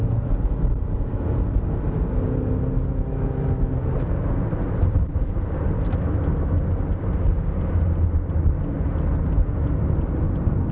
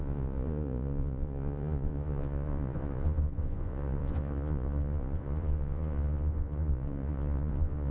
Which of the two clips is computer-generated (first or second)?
second